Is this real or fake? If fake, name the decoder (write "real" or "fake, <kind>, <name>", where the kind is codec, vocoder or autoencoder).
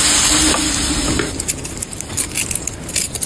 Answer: real